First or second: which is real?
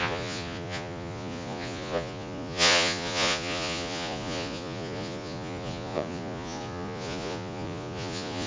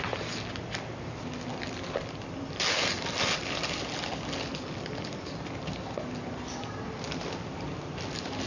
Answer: second